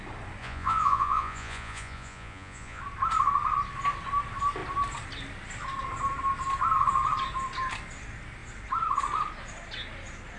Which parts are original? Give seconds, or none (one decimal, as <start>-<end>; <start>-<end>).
0.0-0.4; 2.8-10.4